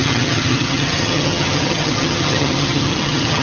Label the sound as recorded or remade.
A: remade